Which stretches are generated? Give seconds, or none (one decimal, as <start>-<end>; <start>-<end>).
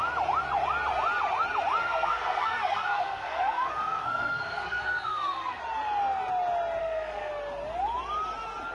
1.8-5.6; 6.8-7.3